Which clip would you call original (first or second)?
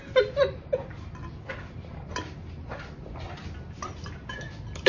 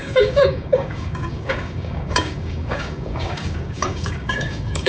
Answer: first